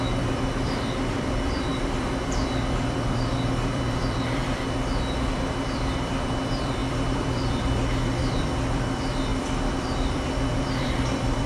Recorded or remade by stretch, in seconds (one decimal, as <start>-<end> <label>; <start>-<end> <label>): 0.0-4.6 remade; 4.6-5.3 recorded; 5.3-11.5 remade